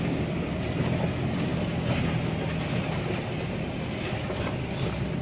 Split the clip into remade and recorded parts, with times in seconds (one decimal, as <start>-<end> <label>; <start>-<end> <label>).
0.0-5.2 recorded